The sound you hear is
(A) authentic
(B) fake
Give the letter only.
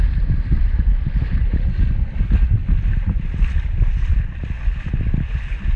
A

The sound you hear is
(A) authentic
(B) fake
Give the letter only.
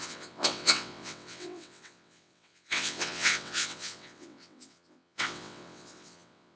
B